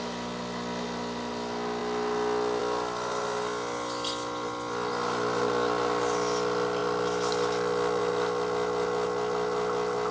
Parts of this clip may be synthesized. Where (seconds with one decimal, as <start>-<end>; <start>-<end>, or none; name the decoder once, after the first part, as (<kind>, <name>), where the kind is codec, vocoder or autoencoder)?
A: none